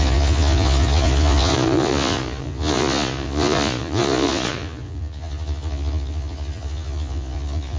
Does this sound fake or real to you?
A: fake